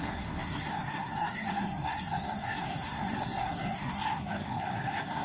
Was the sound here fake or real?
fake